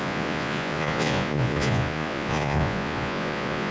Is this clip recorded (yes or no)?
no